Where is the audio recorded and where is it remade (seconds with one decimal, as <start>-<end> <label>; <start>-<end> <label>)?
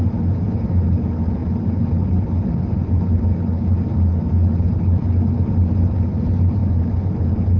0.0-7.6 recorded